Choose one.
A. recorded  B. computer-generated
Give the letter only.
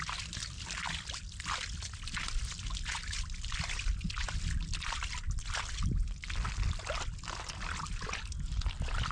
A